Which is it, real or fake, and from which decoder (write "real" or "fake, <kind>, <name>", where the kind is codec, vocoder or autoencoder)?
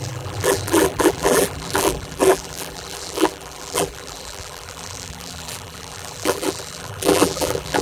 fake, vocoder, BigVGAN v2